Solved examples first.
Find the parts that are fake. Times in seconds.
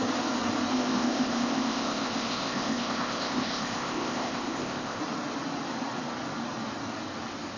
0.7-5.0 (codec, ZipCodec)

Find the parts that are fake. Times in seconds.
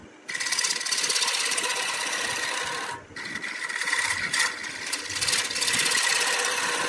none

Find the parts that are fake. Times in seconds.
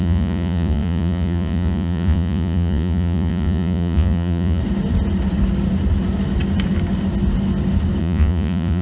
0.0-4.6 (vocoder, Vocos); 8.0-8.8